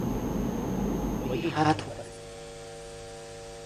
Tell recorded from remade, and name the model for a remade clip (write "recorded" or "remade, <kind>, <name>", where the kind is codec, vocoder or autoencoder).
recorded